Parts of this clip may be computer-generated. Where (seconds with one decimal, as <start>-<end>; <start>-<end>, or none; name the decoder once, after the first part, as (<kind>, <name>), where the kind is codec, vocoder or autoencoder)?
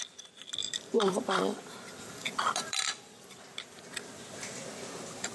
0.6-3.8 (vocoder, BigVGAN v2)